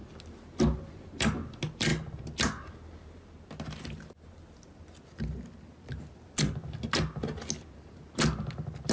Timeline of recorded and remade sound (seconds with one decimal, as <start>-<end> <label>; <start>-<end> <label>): 0.0-8.9 recorded